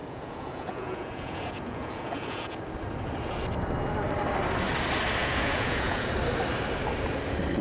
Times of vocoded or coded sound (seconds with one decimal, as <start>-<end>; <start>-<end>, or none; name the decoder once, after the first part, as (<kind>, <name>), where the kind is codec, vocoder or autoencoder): 0.0-2.6 (vocoder, Vocos); 5.2-6.1